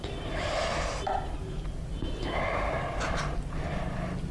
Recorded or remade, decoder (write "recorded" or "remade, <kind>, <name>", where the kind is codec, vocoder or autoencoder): remade, vocoder, BigVGAN v2